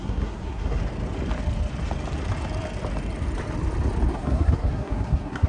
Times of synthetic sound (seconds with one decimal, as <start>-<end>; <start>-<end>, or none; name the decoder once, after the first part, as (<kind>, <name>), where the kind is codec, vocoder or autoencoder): 0.0-0.8 (codec, SNAC); 4.1-5.5